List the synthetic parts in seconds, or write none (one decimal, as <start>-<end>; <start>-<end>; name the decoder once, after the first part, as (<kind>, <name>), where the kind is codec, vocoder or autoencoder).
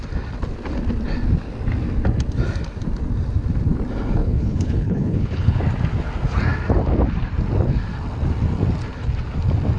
4.2-5.6 (codec, HILCodec)